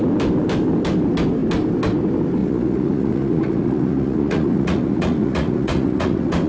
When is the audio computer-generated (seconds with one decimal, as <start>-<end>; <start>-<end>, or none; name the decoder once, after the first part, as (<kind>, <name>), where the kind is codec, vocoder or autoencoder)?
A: 2.4-6.5 (vocoder, Vocos)